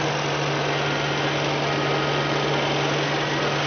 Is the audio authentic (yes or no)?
yes